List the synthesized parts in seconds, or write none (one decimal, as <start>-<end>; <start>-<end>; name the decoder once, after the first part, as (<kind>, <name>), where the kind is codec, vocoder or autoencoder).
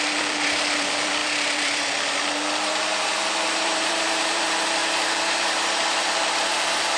0.0-7.0 (vocoder, BigVGAN v2)